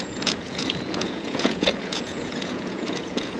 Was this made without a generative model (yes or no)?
no